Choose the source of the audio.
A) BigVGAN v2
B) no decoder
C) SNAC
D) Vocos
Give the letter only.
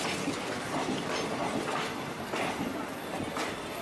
B